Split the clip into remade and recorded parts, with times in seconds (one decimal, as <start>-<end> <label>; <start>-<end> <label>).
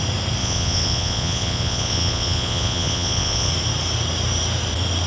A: 0.0-0.4 recorded; 0.4-3.5 remade; 3.5-5.1 recorded